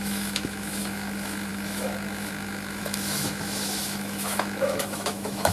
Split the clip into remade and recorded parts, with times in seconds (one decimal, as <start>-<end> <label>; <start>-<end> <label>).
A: 0.0-5.5 remade